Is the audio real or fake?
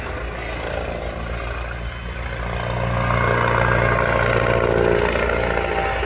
real